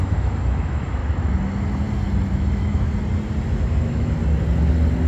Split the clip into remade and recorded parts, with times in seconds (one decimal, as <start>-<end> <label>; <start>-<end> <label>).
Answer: 0.0-1.0 remade; 1.0-2.3 recorded; 2.3-2.9 remade; 2.9-3.8 recorded; 3.8-4.2 remade; 4.2-5.1 recorded